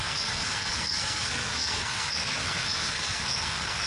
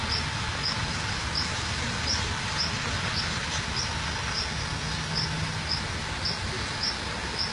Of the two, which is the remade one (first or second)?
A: first